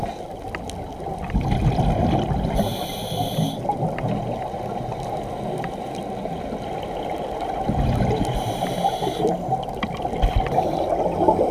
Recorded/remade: recorded